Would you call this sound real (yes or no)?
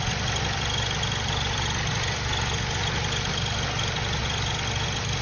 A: yes